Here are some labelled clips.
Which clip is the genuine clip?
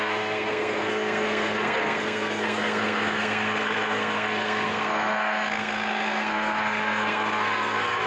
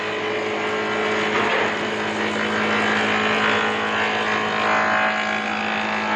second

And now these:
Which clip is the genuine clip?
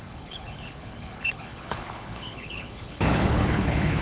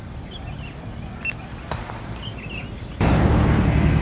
second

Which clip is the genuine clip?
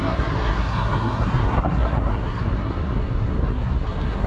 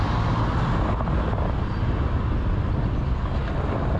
second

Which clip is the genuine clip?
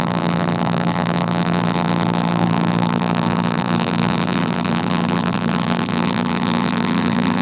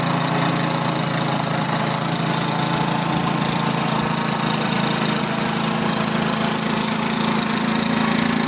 second